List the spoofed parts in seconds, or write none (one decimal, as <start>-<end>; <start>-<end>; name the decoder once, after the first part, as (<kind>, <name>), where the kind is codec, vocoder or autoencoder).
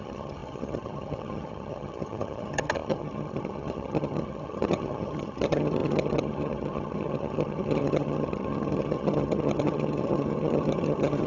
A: 0.0-11.3 (vocoder, HiFi-GAN)